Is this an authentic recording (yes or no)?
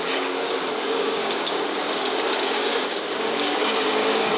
no